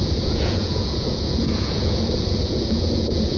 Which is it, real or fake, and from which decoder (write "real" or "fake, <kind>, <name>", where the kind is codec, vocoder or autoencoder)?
fake, vocoder, Vocos